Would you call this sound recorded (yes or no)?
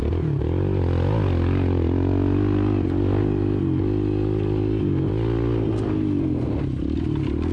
yes